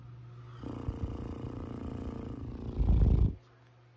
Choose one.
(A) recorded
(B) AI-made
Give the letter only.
A